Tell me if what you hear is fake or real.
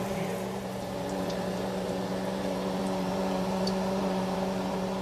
fake